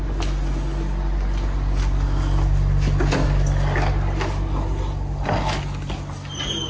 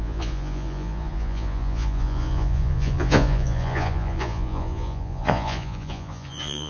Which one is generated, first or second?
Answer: second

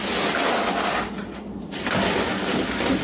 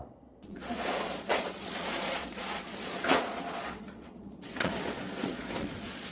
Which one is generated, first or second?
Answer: second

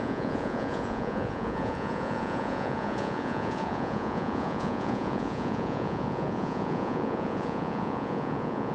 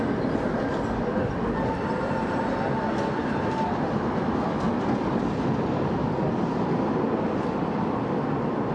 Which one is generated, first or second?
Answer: first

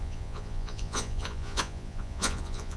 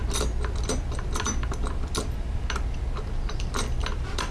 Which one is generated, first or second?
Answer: first